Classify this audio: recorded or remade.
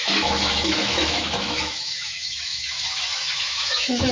remade